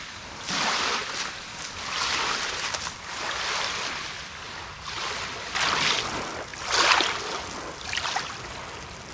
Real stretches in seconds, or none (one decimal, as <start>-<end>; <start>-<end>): 0.0-9.1